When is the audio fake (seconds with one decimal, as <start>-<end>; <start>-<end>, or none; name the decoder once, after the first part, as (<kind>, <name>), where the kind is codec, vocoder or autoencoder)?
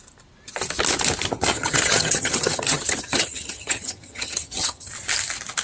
1.5-4.9 (vocoder, HiFi-GAN)